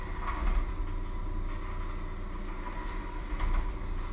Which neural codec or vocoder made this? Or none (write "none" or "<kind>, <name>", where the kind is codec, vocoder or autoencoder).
none